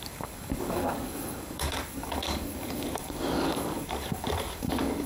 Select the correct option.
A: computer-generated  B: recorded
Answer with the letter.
A